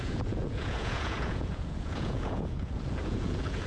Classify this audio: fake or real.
fake